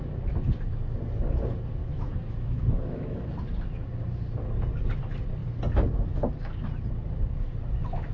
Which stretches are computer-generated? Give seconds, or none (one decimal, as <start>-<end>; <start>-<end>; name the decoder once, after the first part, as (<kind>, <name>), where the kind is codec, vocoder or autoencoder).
1.8-3.3 (autoencoder, DAC-VAE)